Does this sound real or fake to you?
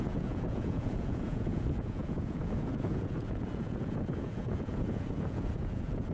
fake